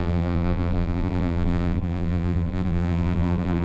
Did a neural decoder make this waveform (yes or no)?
yes